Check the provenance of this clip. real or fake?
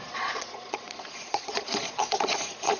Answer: fake